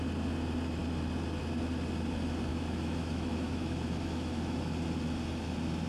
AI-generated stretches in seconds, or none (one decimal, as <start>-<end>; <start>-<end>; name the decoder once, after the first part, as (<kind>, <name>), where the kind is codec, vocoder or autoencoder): 2.5-4.6 (autoencoder, DAC-VAE)